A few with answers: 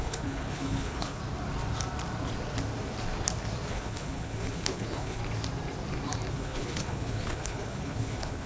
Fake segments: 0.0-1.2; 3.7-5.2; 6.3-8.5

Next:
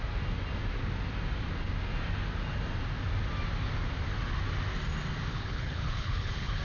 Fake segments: 5.3-6.6

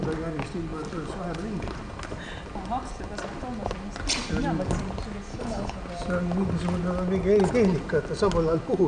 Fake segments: 5.3-5.8

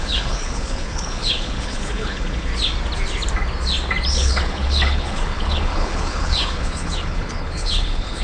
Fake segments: 0.0-2.5; 4.1-8.2

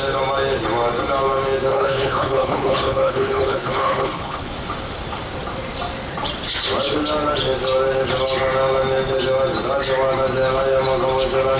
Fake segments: 1.7-4.5

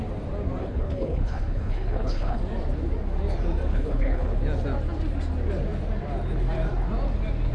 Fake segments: 0.6-2.4; 3.7-4.3